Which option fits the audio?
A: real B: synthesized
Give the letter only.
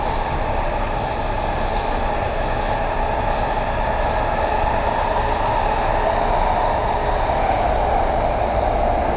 A